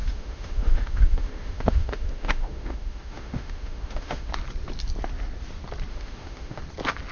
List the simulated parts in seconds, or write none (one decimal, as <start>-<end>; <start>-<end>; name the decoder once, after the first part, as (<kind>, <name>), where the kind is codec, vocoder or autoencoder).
0.0-4.3 (autoencoder, DAC-VAE); 5.9-6.6